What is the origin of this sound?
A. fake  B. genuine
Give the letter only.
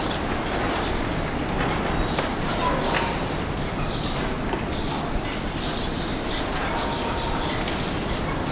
B